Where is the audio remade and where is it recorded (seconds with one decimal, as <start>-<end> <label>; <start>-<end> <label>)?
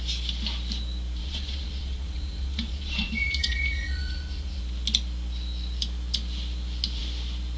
0.0-1.2 recorded; 1.2-4.6 remade; 4.6-7.6 recorded